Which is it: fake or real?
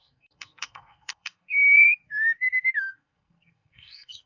fake